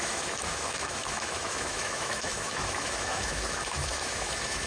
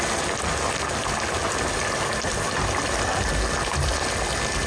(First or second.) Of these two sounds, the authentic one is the second